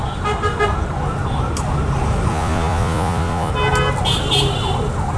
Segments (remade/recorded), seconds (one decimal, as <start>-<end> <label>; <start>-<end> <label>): 0.0-2.3 recorded; 2.3-3.5 remade; 3.5-5.2 recorded